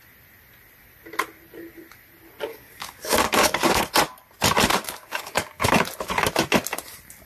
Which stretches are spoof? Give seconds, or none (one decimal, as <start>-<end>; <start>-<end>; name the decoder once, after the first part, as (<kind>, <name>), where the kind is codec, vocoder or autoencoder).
2.5-3.8 (codec, DAC); 4.7-5.7